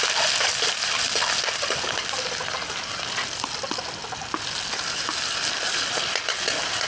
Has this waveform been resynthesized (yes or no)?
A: no